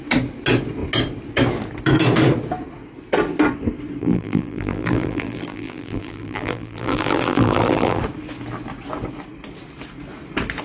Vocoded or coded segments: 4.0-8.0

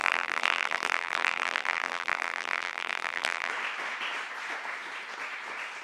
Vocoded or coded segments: 0.0-3.5

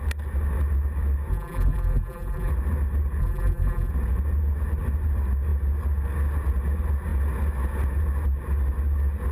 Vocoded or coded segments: 1.3-2.5; 3.2-3.9

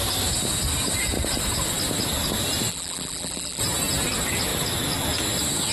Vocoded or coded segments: 2.7-3.6

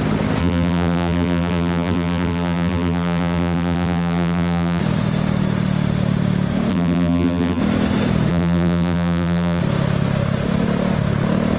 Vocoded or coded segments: 0.4-4.8; 6.7-7.6; 8.3-9.6

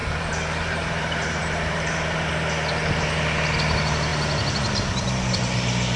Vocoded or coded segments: 0.0-2.3

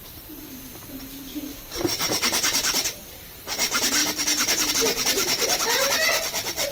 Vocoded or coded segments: 1.5-3.4